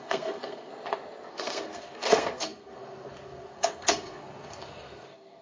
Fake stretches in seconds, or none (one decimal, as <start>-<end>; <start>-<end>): 0.0-0.7; 1.3-5.4

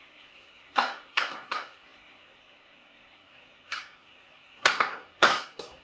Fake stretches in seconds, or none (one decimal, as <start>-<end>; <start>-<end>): 0.0-5.8

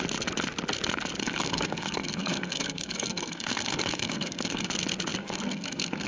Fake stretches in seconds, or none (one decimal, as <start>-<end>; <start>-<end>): 1.2-4.7; 5.2-6.1